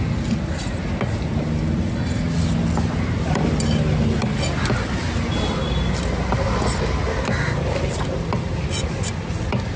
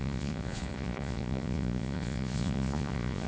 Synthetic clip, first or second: second